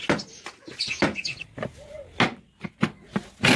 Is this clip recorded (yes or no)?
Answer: yes